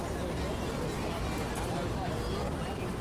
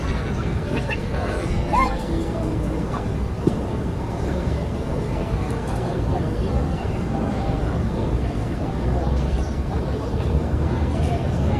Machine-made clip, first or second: second